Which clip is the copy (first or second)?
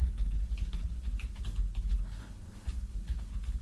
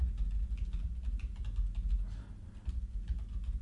first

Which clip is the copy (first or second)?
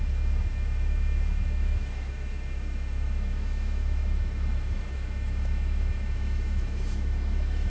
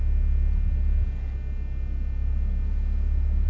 first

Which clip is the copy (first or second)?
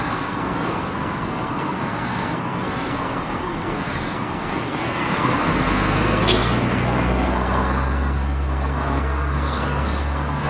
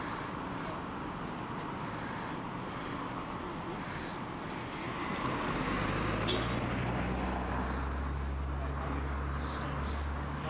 first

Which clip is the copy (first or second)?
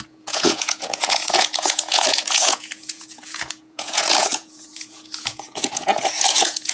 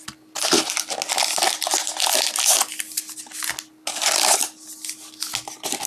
first